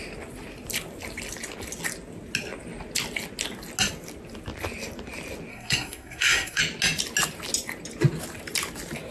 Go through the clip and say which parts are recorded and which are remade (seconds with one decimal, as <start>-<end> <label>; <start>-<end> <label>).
0.0-5.5 recorded; 5.5-6.6 remade; 6.6-9.1 recorded